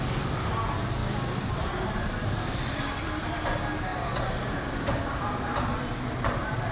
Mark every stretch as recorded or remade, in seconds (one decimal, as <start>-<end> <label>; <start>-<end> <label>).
0.0-1.0 recorded; 1.0-2.1 remade; 2.1-6.7 recorded